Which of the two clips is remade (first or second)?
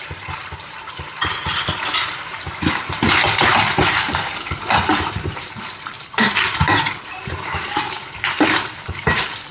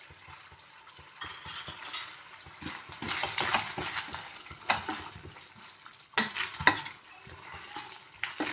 first